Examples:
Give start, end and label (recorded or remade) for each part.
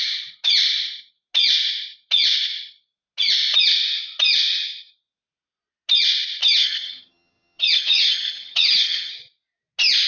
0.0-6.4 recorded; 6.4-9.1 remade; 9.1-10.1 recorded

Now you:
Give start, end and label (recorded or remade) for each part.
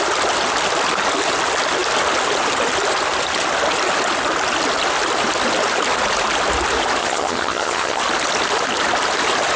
0.0-7.0 recorded; 7.0-8.0 remade; 8.0-9.6 recorded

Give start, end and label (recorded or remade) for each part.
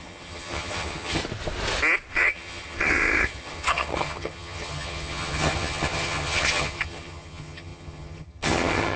0.0-1.2 remade; 1.2-2.1 recorded; 2.1-9.0 remade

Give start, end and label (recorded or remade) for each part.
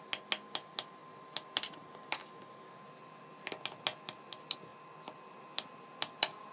0.0-6.5 recorded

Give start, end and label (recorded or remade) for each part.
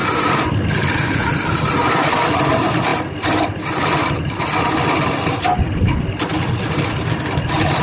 0.0-7.8 recorded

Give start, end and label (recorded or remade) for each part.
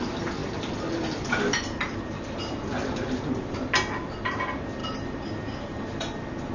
0.0-6.5 recorded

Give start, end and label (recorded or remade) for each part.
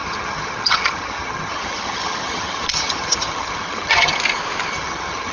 0.0-4.1 remade; 4.1-4.7 recorded; 4.7-5.3 remade